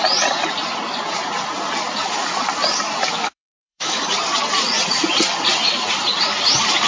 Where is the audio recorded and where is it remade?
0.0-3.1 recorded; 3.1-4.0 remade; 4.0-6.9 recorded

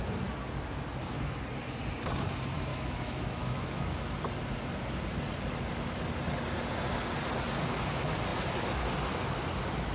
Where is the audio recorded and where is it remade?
0.0-2.7 recorded; 2.7-4.1 remade; 4.1-9.9 recorded

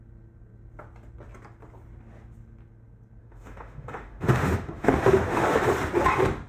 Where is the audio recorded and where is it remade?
0.0-3.2 recorded; 3.2-5.6 remade; 5.6-6.5 recorded

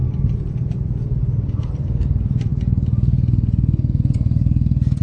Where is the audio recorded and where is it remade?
0.0-5.0 recorded

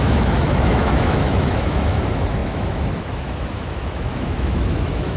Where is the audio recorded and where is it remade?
0.0-5.2 remade

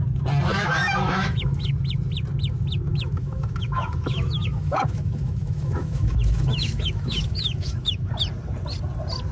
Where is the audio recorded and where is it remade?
0.0-0.5 recorded; 0.5-1.7 remade; 1.7-2.9 recorded; 2.9-8.1 remade; 8.1-9.3 recorded

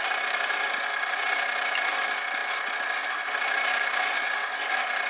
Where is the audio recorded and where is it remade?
0.0-5.1 recorded